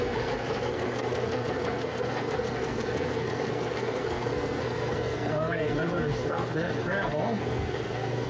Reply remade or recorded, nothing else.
remade